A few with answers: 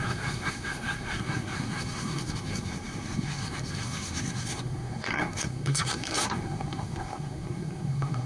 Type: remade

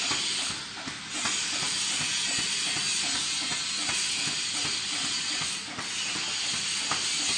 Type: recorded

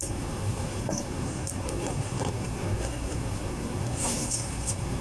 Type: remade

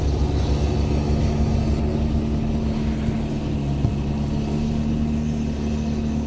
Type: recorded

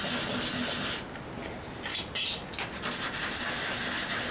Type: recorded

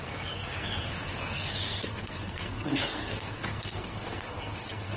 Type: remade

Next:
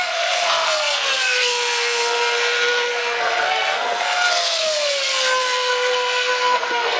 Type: remade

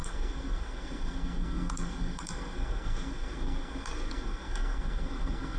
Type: remade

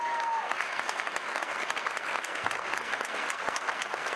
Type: remade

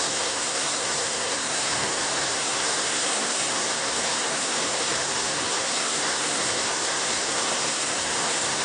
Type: remade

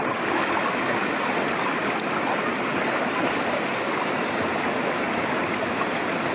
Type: recorded